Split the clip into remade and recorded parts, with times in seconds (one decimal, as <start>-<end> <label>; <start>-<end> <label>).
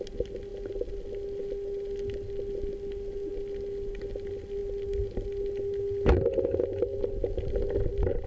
0.0-8.3 recorded